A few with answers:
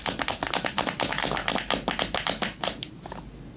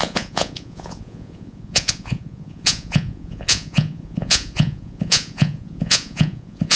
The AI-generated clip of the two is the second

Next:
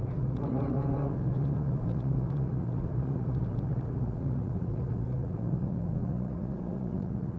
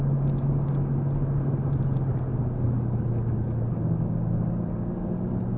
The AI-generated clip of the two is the first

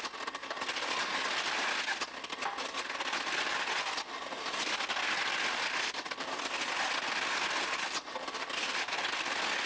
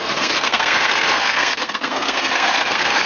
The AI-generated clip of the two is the second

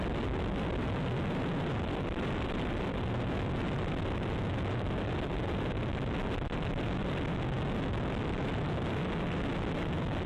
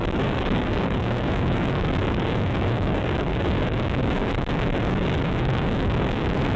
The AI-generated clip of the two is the second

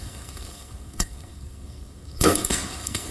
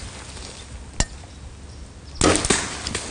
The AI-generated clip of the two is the first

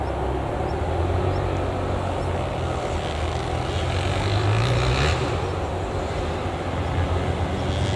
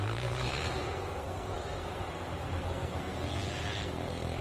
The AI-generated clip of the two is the second